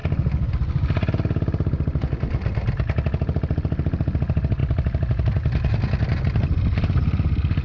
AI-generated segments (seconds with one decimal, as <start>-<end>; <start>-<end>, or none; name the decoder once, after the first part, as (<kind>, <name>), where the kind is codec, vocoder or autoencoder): none